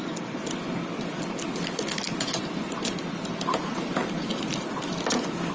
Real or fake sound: real